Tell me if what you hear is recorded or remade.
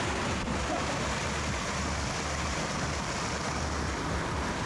recorded